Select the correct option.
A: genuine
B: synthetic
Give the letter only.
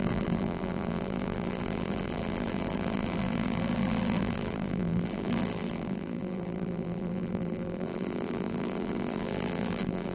B